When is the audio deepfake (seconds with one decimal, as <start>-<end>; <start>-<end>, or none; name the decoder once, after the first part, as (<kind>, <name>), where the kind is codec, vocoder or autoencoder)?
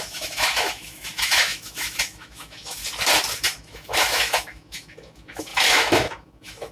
0.0-2.8 (autoencoder, DAC-VAE); 3.4-6.7